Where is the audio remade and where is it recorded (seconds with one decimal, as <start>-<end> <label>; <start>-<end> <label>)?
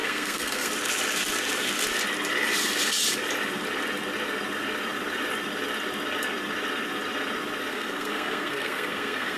0.0-0.7 remade; 0.7-7.7 recorded; 7.7-9.4 remade